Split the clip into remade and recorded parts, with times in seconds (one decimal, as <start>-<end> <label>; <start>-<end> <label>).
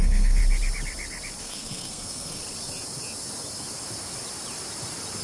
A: 0.0-0.4 remade; 0.4-1.4 recorded; 1.4-2.4 remade; 2.4-5.2 recorded